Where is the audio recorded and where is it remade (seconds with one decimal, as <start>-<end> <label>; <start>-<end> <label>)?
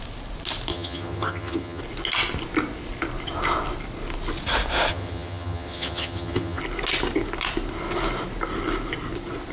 0.0-0.7 recorded; 0.7-1.8 remade; 1.8-4.9 recorded; 4.9-6.6 remade; 6.6-9.5 recorded